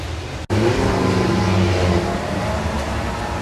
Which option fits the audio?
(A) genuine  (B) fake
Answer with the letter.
A